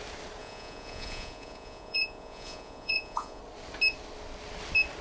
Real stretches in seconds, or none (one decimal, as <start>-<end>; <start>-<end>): 0.0-0.4; 3.4-5.0